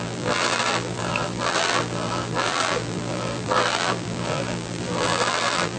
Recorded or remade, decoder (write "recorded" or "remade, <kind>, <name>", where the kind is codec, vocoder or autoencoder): remade, vocoder, BigVGAN v2